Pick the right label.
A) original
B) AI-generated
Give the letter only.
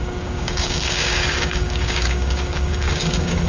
B